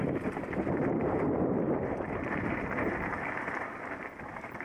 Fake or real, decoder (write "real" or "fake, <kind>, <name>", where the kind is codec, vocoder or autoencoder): fake, vocoder, BigVGAN v2